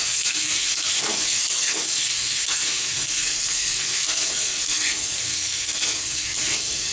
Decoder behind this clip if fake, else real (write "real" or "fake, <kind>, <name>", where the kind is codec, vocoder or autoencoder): fake, codec, SNAC